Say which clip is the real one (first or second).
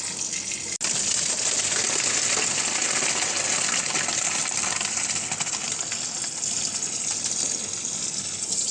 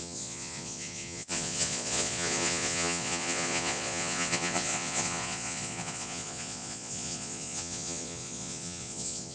first